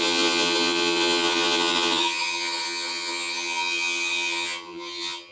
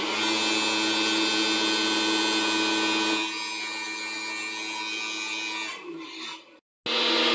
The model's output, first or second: first